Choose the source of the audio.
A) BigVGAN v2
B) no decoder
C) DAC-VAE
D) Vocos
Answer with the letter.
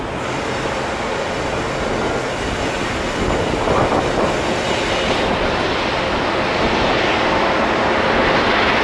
B